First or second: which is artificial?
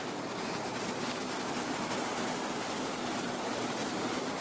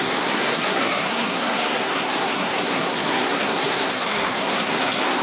second